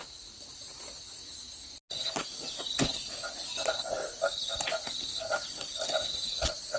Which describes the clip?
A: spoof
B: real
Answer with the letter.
B